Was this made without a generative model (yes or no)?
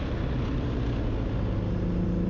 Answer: yes